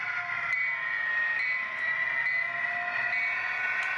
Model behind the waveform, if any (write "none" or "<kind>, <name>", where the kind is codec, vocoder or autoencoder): none